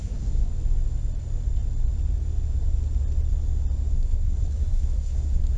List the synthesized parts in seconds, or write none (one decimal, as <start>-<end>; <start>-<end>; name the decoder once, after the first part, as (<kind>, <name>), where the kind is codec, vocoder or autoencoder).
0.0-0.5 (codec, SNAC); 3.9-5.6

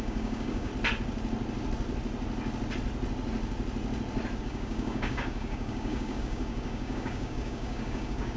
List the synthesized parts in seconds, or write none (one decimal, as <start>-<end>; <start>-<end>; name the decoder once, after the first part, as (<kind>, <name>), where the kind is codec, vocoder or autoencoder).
0.0-0.7 (codec, DAC); 4.4-8.4

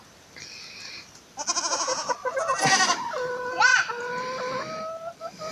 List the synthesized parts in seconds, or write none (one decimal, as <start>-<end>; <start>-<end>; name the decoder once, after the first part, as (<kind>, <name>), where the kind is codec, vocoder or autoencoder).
none

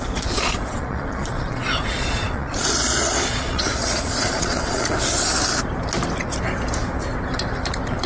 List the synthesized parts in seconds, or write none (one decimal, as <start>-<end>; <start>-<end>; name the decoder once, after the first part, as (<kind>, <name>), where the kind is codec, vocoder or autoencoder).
0.0-4.9 (vocoder, Vocos)

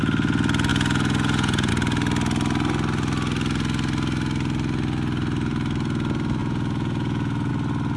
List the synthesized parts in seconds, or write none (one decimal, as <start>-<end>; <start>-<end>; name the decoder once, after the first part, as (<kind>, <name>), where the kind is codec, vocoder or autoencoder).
0.7-1.7 (vocoder, Vocos); 6.4-7.5